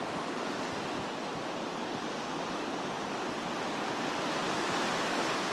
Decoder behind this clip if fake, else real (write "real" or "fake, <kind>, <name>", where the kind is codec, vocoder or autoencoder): real